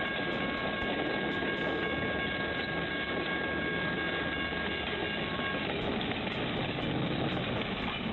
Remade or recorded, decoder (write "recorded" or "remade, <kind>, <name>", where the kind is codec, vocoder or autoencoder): recorded